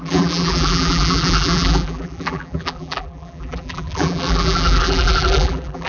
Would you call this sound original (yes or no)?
no